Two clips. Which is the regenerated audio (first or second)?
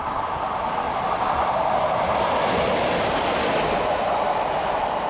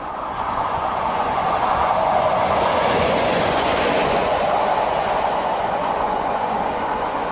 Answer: second